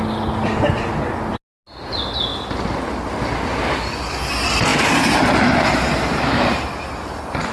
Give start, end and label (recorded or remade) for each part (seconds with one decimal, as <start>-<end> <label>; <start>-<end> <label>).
0.0-7.5 recorded